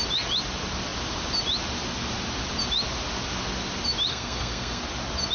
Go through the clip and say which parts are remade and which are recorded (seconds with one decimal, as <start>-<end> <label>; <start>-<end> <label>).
0.0-4.1 recorded; 4.1-4.8 remade; 4.8-5.3 recorded